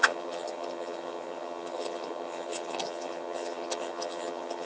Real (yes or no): no